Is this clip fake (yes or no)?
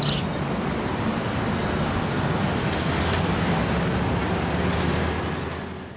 no